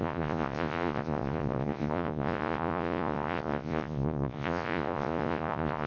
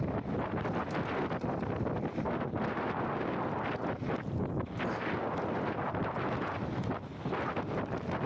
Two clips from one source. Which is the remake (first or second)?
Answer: first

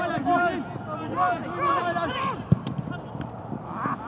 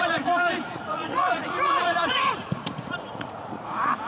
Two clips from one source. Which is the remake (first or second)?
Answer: second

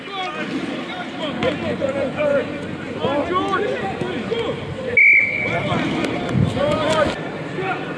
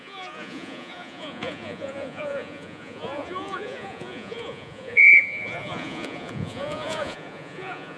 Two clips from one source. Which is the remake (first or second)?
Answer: second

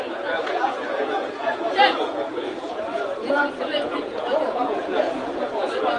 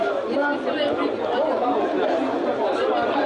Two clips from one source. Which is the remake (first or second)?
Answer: first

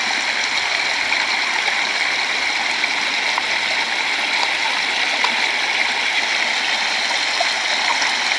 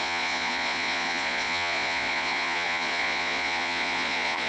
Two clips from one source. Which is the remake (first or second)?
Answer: second